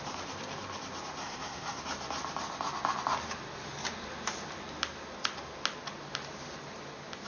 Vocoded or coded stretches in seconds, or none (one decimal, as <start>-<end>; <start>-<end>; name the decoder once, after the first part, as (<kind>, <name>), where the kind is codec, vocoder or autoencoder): 1.2-1.8 (codec, SNAC)